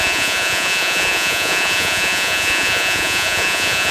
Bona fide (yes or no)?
no